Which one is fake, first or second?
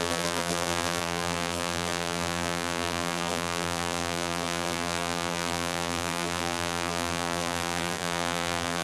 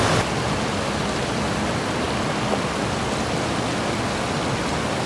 first